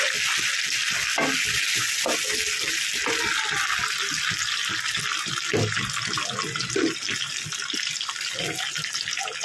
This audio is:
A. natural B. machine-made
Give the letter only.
A